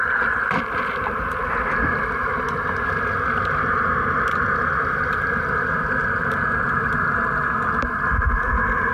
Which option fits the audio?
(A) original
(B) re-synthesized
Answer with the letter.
A